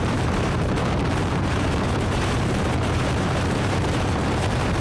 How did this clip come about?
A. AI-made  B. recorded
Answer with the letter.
A